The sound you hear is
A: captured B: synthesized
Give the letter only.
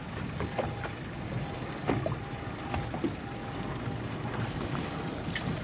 A